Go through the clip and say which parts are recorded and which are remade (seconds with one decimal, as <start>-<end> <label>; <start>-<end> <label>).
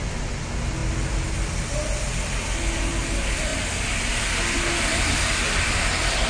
0.0-6.3 recorded